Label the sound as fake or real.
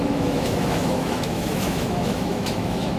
fake